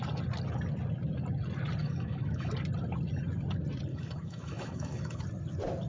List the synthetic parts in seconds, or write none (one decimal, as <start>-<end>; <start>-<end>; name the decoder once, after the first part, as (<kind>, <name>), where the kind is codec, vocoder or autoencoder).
1.8-2.5 (autoencoder, DAC-VAE); 3.9-5.2

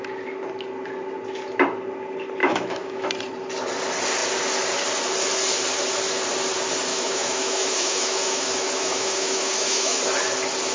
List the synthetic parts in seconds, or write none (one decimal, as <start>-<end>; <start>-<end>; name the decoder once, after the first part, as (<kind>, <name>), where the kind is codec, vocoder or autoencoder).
2.4-3.1 (autoencoder, DAC-VAE); 6.9-10.0